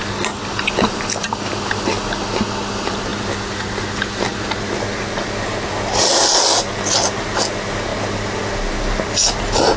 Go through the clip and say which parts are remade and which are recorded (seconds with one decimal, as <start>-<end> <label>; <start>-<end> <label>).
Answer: 0.0-9.8 recorded